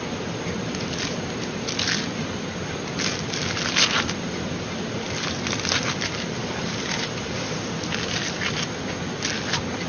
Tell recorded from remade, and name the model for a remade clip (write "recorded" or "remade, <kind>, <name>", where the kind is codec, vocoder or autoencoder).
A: recorded